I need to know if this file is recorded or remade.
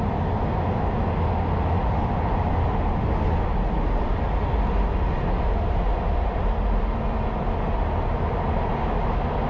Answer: recorded